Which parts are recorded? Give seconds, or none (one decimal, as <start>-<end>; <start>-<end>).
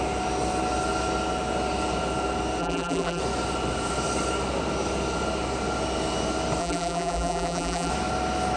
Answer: 0.0-2.6; 3.2-6.6; 7.9-8.6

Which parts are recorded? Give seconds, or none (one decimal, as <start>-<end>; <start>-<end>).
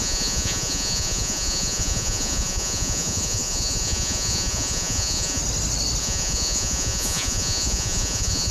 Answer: 5.4-6.0